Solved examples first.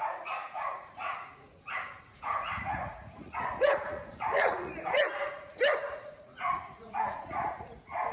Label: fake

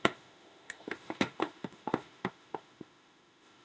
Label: fake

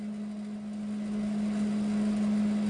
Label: real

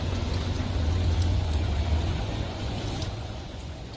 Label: fake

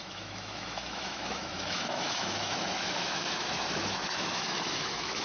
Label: fake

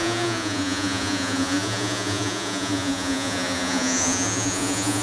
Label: fake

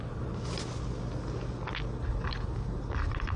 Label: real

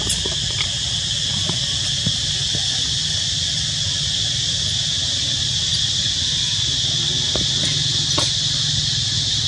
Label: real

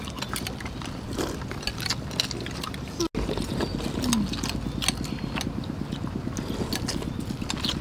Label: real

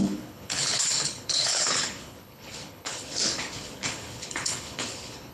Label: fake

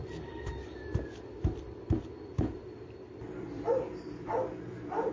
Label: fake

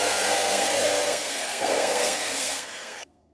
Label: fake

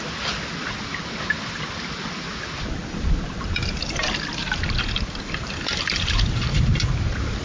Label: real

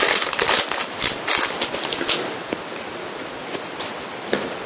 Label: real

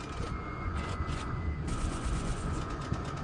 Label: fake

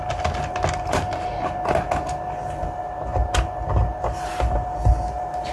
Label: real